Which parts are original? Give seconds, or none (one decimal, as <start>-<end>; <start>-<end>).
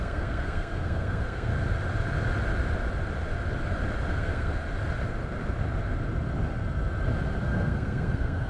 1.5-4.1; 4.5-7.4